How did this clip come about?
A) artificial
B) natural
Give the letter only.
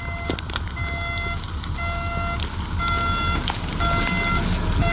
B